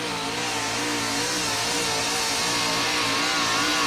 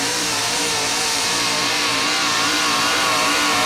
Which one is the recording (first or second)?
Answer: first